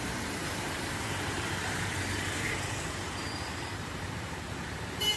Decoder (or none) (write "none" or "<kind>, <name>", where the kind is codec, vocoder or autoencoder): vocoder, BigVGAN v2